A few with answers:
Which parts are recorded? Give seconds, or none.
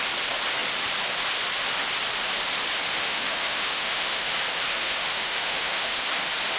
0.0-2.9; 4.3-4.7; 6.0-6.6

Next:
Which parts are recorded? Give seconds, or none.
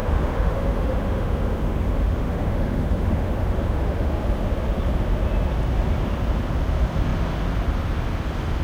4.1-8.6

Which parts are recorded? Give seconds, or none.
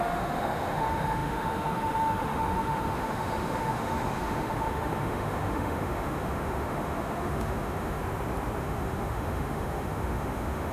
8.0-8.6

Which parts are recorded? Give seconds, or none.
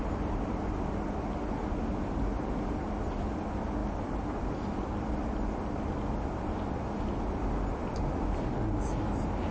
0.0-9.5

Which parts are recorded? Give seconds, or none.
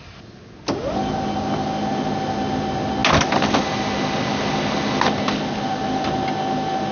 0.0-6.9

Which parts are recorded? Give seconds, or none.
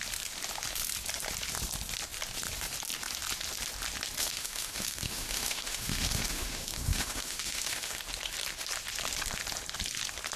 0.0-4.2; 8.0-10.4